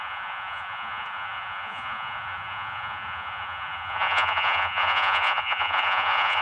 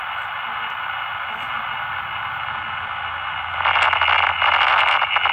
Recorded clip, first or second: second